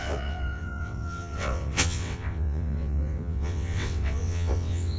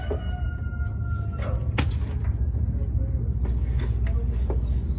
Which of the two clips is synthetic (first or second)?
first